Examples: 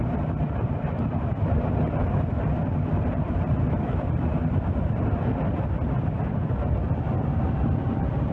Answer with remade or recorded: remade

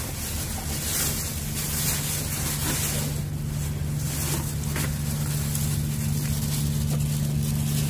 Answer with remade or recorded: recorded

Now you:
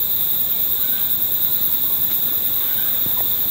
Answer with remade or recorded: recorded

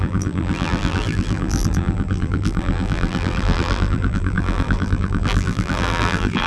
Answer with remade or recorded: remade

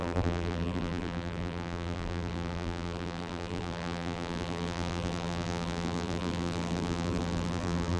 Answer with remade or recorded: remade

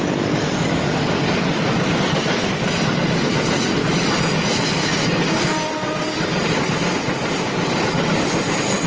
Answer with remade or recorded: remade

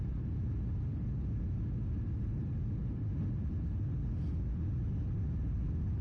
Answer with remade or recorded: recorded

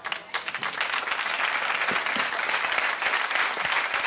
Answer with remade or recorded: recorded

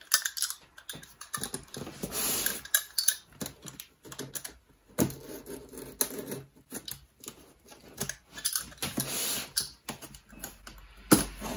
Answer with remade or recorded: recorded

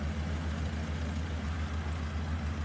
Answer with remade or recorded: recorded